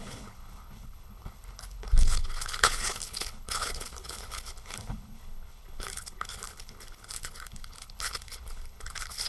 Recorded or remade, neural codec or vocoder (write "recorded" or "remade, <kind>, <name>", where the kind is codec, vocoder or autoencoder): remade, codec, HILCodec